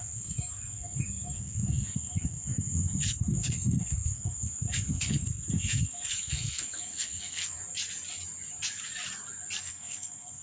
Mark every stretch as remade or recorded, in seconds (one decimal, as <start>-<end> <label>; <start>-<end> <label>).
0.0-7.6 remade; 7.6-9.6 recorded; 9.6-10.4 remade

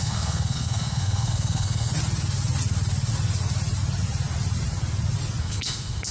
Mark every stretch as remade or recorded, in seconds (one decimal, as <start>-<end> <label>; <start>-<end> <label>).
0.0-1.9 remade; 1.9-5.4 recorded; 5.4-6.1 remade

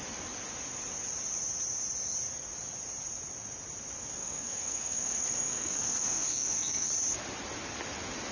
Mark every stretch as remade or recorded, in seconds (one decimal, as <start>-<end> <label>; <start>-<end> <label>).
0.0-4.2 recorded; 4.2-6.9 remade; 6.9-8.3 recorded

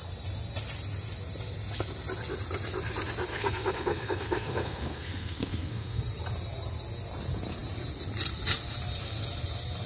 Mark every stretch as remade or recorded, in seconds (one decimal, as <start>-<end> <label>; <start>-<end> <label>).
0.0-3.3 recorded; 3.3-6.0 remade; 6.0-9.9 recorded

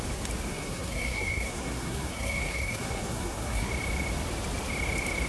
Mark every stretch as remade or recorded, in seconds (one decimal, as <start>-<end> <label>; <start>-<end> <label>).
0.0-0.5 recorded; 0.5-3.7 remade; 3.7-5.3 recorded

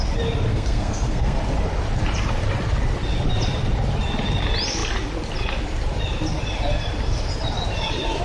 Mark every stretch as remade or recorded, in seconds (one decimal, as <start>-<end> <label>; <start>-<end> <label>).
0.0-0.5 recorded; 0.5-1.4 remade; 1.4-8.2 recorded

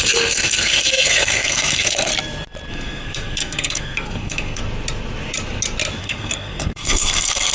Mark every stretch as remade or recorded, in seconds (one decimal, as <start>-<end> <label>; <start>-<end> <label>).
0.0-2.1 remade; 2.1-2.7 recorded; 2.7-4.6 remade; 4.6-6.0 recorded; 6.0-7.5 remade